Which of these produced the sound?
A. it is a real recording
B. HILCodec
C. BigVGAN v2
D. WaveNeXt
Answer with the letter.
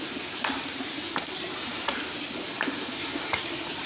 A